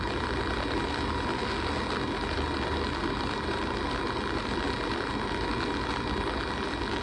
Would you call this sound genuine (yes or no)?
yes